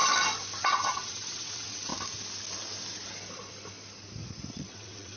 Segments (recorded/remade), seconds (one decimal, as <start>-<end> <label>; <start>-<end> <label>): 0.0-0.6 recorded; 0.6-1.9 remade; 1.9-4.5 recorded; 4.5-5.2 remade

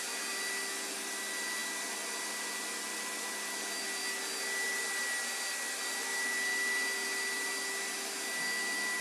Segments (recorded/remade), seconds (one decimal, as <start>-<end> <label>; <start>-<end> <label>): 0.0-9.0 recorded